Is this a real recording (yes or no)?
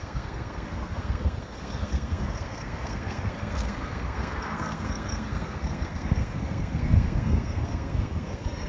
no